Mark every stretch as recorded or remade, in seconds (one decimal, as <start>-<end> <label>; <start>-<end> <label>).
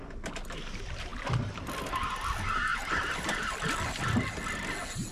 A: 0.0-2.7 recorded; 2.7-3.5 remade; 3.5-5.1 recorded